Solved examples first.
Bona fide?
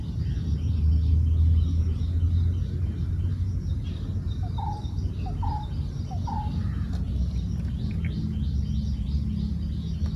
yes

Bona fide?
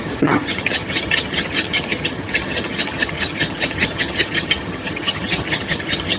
no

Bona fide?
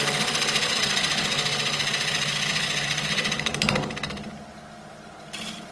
yes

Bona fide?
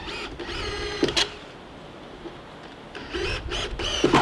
yes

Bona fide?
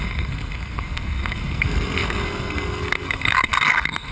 no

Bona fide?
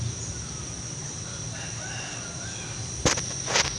yes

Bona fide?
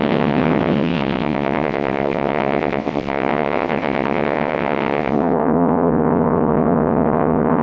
no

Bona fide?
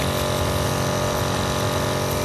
yes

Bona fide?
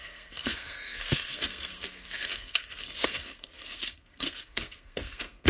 no